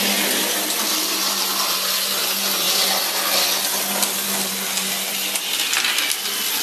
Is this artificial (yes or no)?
no